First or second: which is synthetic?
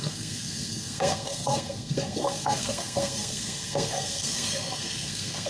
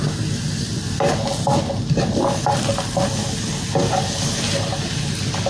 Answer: first